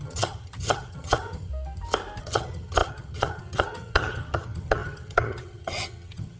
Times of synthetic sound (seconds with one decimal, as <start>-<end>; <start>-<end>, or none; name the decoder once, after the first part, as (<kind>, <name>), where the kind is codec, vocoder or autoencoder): 0.0-1.5 (vocoder, HiFi-GAN); 2.2-6.4